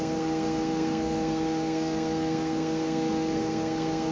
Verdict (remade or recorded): remade